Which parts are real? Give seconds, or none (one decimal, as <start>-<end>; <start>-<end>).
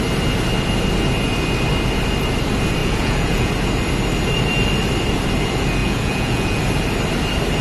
0.0-2.8; 3.5-5.8; 6.6-7.6